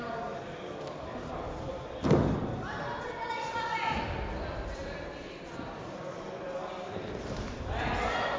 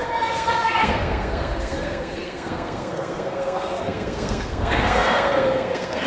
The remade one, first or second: second